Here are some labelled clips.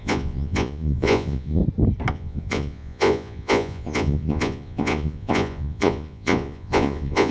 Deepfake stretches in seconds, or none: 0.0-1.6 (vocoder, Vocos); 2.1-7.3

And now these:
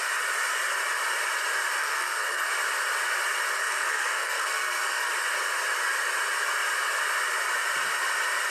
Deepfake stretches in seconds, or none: 1.8-2.5 (codec, SNAC); 3.6-5.1

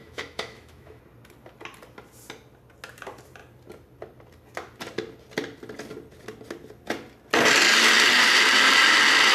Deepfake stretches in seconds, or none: 0.0-1.0 (autoencoder, DAC-VAE)

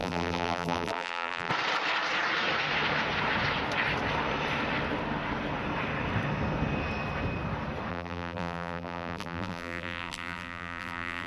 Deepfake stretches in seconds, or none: 0.0-1.5 (vocoder, BigVGAN v2); 7.9-11.3

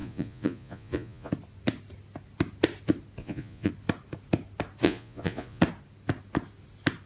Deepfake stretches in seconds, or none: 0.0-1.3 (vocoder, Vocos); 3.2-3.7; 4.8-5.6

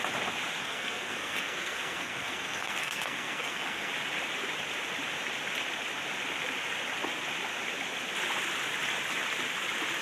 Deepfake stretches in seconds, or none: 0.6-3.9 (codec, SNAC)

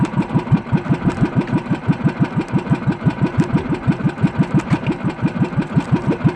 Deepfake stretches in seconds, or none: none

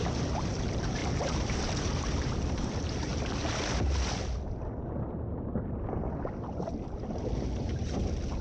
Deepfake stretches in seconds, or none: 0.0-3.1 (vocoder, BigVGAN v2); 7.6-8.4